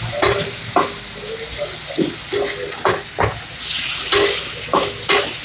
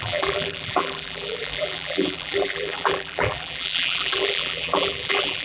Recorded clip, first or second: first